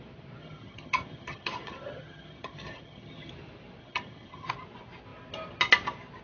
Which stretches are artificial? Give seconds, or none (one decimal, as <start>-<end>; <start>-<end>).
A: 0.4-3.3; 3.8-4.5